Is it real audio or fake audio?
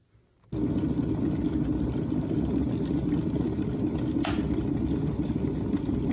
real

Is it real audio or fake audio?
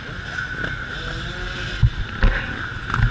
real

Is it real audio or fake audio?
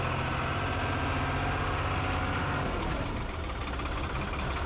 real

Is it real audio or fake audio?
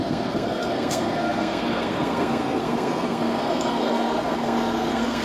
fake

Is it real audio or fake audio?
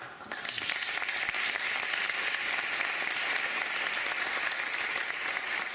fake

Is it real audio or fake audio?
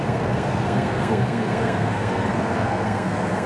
fake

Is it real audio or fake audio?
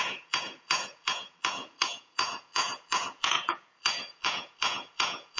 fake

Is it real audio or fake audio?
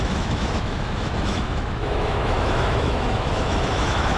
fake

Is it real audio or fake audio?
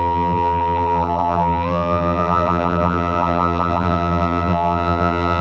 fake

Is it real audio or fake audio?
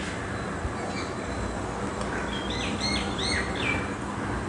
real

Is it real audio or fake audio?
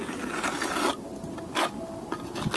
real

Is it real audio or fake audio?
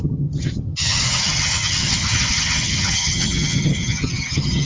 fake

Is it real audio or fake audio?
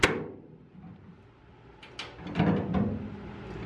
real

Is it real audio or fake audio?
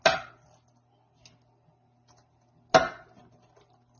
real